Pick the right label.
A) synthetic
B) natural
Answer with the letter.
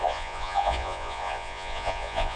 A